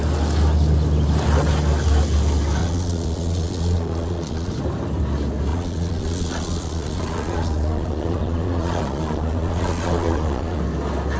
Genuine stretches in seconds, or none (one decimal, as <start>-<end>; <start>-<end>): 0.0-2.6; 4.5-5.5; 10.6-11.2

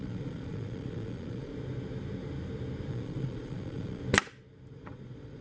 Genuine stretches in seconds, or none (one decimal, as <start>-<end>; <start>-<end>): 1.5-2.9; 4.0-4.7

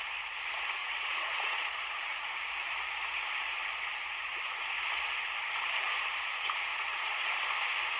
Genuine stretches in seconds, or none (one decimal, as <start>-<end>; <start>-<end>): 0.0-0.8; 2.2-6.7; 7.3-8.0